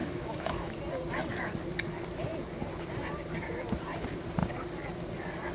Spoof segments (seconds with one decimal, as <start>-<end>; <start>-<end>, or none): 0.0-0.8